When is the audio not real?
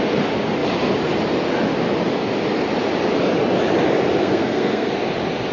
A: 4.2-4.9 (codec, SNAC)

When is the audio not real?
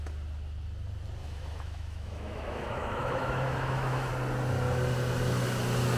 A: 1.2-4.1 (autoencoder, DAC-VAE)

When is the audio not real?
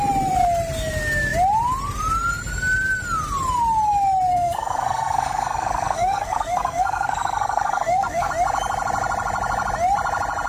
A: 4.3-8.3 (codec, SNAC)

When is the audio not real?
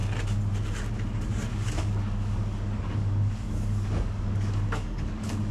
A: 0.9-5.5 (codec, DAC)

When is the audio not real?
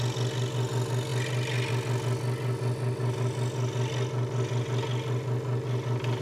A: none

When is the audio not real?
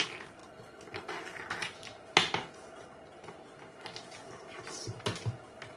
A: 0.4-2.5 (vocoder, BigVGAN v2)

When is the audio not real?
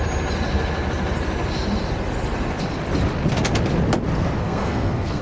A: 4.4-5.2 (codec, SNAC)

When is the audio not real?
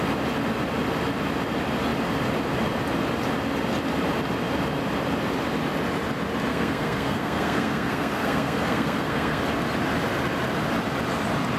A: 6.5-9.4 (codec, SNAC)